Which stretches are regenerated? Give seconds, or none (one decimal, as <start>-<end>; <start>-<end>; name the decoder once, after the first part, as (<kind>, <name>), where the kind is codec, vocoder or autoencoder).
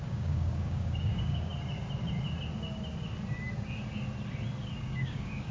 0.0-1.5 (codec, DAC); 4.8-5.5